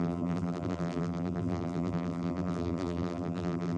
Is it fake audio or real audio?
fake